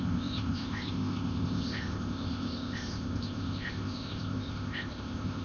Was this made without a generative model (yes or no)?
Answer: no